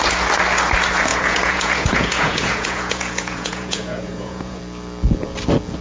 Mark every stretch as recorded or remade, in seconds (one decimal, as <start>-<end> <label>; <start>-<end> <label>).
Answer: 0.0-1.1 recorded; 1.1-4.6 remade; 4.6-5.8 recorded